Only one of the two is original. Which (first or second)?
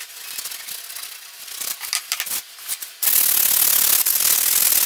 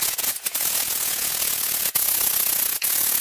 first